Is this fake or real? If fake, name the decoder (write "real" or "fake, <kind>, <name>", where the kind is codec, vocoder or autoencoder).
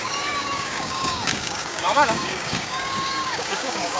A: fake, codec, DAC